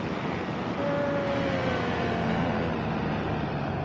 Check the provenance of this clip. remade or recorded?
recorded